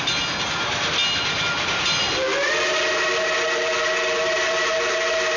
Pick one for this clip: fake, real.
real